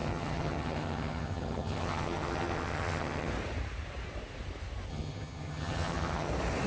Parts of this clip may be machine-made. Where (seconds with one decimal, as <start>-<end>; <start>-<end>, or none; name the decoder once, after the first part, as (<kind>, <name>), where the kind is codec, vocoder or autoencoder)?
0.0-3.3 (vocoder, HiFi-GAN); 4.9-6.3

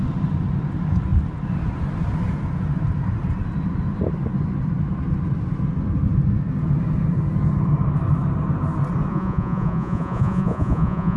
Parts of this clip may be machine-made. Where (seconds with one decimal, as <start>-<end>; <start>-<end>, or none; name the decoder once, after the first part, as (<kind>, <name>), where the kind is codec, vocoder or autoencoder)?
9.1-11.2 (vocoder, Vocos)

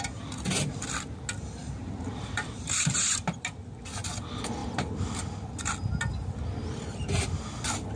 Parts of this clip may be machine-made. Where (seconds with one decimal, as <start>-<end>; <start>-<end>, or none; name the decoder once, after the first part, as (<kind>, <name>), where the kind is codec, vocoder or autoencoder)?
1.6-3.2 (vocoder, BigVGAN v2); 4.6-5.2